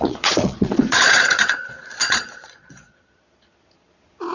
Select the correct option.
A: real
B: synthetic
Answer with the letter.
B